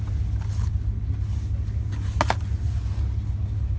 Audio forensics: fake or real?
real